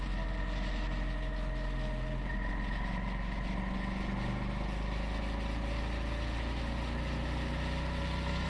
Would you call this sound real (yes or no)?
yes